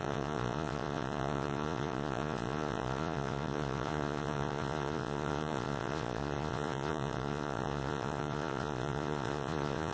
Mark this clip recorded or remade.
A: remade